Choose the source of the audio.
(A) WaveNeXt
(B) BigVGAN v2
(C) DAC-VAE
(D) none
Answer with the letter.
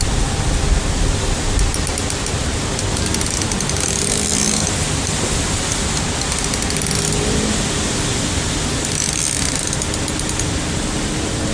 D